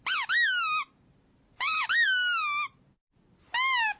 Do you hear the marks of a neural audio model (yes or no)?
no